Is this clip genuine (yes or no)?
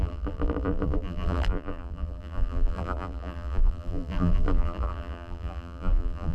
no